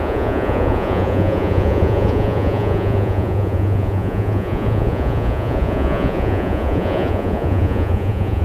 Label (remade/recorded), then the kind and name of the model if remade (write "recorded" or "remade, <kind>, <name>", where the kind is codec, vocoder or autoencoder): remade, vocoder, Vocos